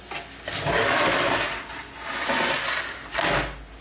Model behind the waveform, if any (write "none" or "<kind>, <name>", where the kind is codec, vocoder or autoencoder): none